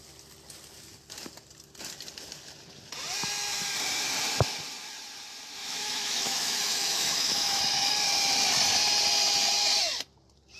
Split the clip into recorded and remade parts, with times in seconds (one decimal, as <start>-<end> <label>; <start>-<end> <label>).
0.0-5.6 recorded; 5.6-7.6 remade; 7.6-10.6 recorded